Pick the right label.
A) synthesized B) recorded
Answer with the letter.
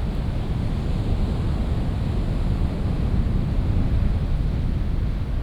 B